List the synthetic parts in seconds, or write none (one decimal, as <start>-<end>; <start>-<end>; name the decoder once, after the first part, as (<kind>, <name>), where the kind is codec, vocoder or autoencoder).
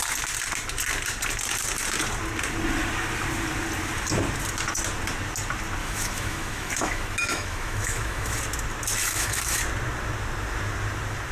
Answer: 5.8-8.4 (autoencoder, DAC-VAE); 9.0-9.6